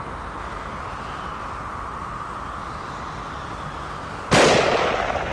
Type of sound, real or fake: real